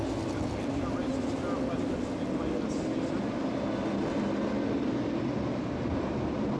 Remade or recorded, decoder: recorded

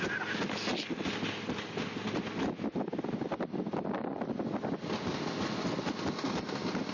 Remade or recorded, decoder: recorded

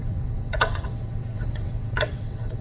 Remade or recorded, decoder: remade, vocoder, WaveNeXt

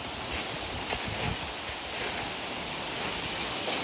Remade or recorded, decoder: recorded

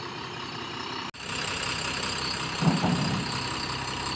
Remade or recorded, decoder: recorded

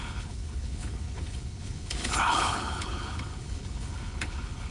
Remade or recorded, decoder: remade, codec, HILCodec